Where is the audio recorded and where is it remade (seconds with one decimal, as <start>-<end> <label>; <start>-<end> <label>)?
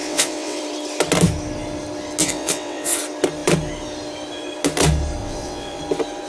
0.0-0.6 remade; 0.6-2.2 recorded; 2.2-3.0 remade; 3.0-5.2 recorded; 5.2-5.8 remade; 5.8-6.3 recorded